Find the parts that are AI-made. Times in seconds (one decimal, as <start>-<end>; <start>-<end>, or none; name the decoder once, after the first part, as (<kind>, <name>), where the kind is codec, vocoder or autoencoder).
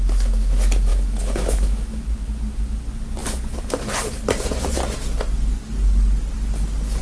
0.9-2.0 (autoencoder, DAC-VAE)